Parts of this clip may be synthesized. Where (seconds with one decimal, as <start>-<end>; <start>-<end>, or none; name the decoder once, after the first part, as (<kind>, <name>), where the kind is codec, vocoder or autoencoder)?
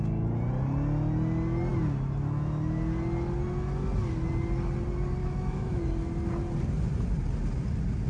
5.2-5.8 (autoencoder, DAC-VAE)